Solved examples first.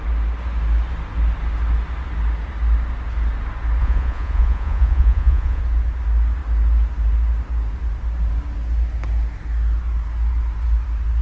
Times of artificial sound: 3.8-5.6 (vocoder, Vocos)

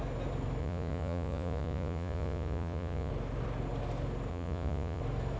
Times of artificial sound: 0.6-3.1 (vocoder, Vocos); 4.3-5.0

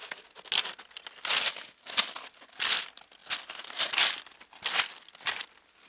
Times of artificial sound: none